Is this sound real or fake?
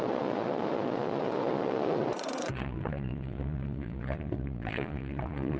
fake